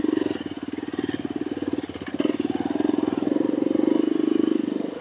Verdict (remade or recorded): recorded